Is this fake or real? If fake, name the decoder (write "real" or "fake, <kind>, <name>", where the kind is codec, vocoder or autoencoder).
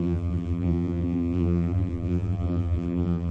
fake, vocoder, BigVGAN v2